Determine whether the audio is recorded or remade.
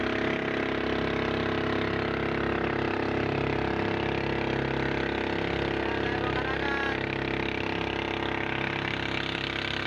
recorded